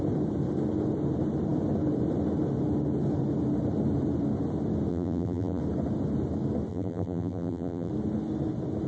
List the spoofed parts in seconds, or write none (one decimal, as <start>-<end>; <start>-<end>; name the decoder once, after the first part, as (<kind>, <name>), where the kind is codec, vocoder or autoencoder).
4.9-5.6 (vocoder, BigVGAN v2); 6.7-7.9